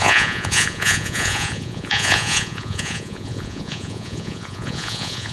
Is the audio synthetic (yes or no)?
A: yes